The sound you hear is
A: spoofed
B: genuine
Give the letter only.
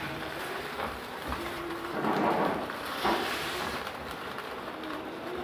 A